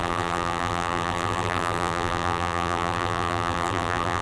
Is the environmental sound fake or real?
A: fake